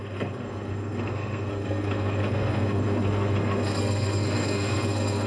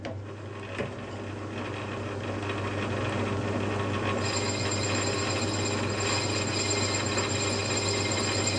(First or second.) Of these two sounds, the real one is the second